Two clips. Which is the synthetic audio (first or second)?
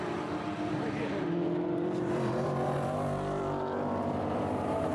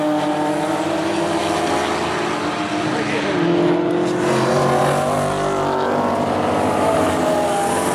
first